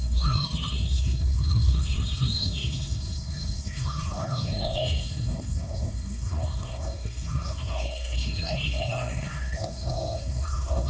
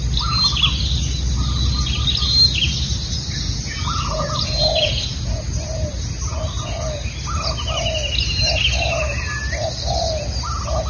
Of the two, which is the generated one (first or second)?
first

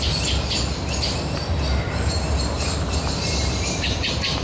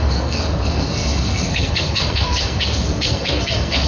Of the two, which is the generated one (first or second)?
second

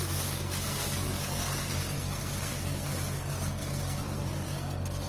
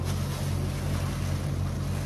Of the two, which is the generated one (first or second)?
first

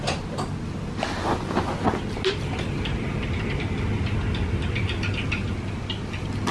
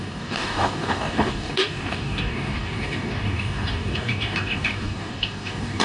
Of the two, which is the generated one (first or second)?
second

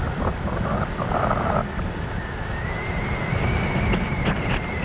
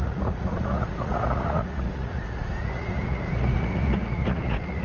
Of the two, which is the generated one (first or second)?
second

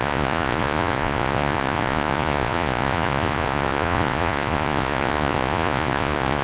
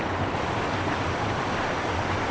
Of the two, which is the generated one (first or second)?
first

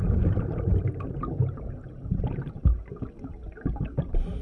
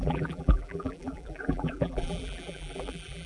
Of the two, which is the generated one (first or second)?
second